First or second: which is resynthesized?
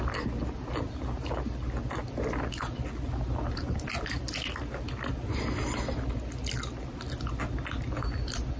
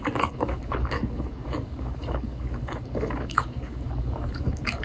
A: second